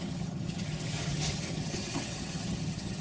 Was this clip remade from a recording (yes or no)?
yes